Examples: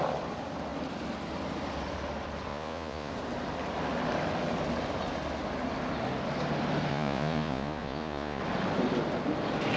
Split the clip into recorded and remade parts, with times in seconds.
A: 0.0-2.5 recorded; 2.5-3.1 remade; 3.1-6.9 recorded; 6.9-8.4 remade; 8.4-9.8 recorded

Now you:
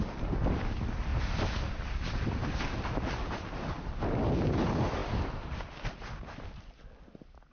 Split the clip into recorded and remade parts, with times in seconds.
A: 0.0-1.1 recorded; 1.1-2.6 remade; 2.6-7.5 recorded

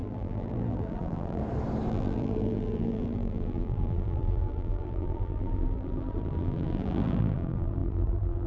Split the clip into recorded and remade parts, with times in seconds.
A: 0.0-1.4 remade; 1.4-1.9 recorded; 1.9-8.5 remade